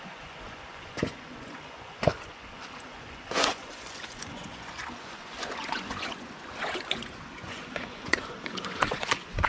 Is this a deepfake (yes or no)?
yes